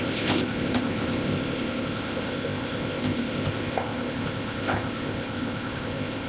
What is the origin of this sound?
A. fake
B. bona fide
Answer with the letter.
A